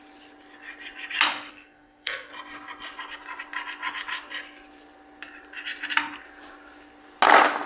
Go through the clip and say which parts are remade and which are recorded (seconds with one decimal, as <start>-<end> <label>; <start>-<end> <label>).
0.0-1.5 recorded; 1.5-2.3 remade; 2.3-7.7 recorded